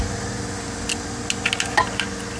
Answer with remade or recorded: recorded